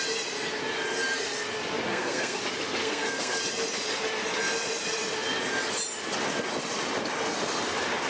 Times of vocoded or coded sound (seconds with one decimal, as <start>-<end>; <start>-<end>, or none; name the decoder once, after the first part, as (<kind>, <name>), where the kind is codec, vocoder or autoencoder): 1.9-2.4 (codec, SNAC); 2.8-3.4